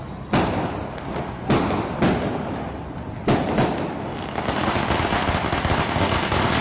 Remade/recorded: recorded